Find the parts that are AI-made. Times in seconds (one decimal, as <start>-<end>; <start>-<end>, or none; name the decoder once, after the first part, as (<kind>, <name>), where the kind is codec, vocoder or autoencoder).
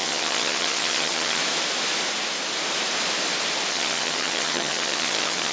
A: 0.0-1.4 (vocoder, HiFi-GAN); 3.7-5.5